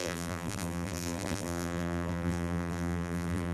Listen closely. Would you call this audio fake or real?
fake